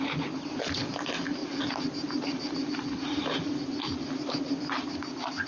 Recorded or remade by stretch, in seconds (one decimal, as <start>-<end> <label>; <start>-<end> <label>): 0.0-5.5 recorded